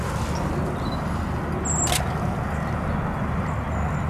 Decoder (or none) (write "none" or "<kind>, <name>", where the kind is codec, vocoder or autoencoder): none